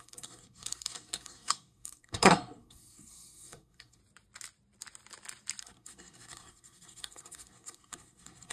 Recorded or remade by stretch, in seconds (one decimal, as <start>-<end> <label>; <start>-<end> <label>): 0.0-4.0 remade; 4.0-5.6 recorded; 5.6-8.5 remade